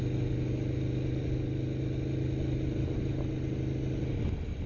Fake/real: real